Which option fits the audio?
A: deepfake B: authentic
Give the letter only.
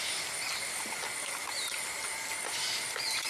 B